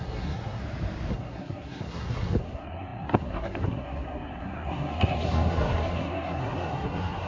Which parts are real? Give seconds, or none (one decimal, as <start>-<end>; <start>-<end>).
0.6-1.1